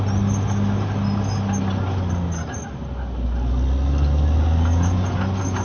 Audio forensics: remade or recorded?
recorded